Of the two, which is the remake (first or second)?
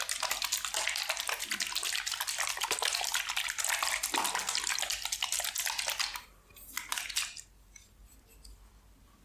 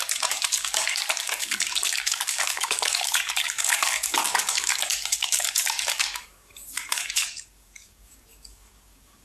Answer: second